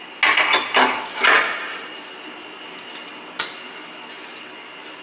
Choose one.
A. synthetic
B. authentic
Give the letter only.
B